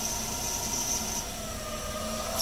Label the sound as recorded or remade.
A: recorded